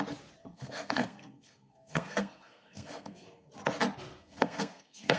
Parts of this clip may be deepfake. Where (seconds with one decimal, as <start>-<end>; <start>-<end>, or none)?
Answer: 0.4-3.5; 4.2-5.2